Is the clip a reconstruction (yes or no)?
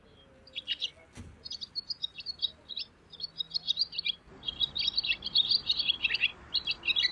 no